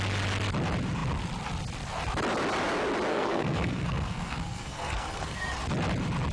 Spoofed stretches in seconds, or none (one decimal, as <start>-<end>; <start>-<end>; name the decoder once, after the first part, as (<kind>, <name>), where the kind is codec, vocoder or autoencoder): 3.1-5.6 (codec, SNAC)